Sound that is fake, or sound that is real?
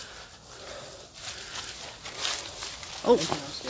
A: real